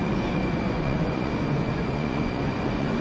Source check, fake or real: fake